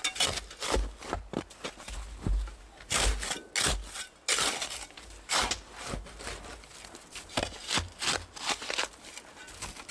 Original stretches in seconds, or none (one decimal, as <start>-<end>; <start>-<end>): 0.0-9.9

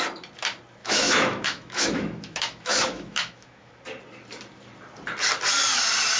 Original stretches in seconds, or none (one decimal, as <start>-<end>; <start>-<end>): 0.0-0.8; 3.7-6.2

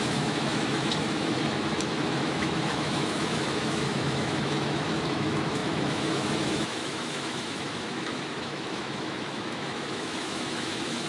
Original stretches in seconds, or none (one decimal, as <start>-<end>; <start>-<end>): none

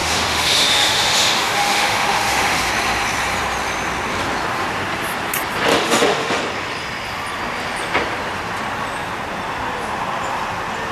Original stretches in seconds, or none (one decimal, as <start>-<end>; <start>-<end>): 2.7-5.7; 6.4-10.9

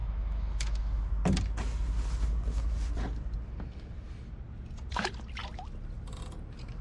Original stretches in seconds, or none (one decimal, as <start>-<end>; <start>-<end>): 1.1-6.8